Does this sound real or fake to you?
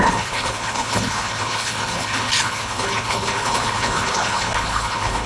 fake